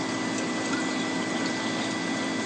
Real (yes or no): yes